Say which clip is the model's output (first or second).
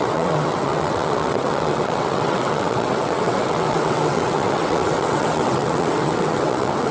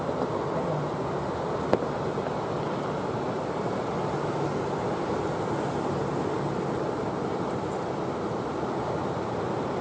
first